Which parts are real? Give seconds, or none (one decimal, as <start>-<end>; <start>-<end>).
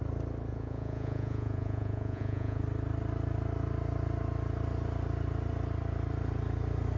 0.0-0.5; 2.6-7.0